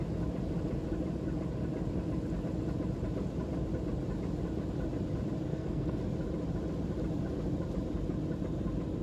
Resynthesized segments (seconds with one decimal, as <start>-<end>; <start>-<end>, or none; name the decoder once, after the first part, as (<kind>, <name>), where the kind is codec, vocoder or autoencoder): 5.5-6.0 (codec, SNAC)